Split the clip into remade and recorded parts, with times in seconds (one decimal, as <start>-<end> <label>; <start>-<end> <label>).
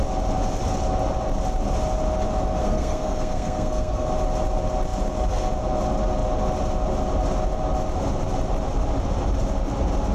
0.0-2.6 recorded; 2.6-4.1 remade; 4.1-10.1 recorded